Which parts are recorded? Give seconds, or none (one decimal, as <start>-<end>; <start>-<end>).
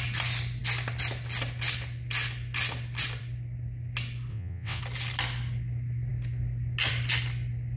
0.0-4.3; 4.8-7.8